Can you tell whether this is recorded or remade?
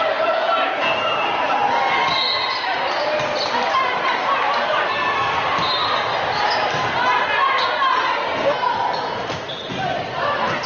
recorded